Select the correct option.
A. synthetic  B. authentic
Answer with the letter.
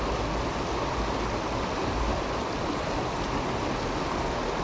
B